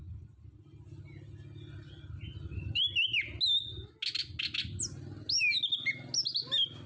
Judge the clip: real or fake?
real